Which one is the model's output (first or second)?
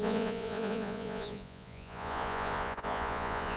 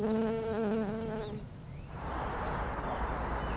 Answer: first